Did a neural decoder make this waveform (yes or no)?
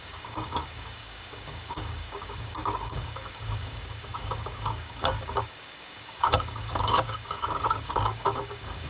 yes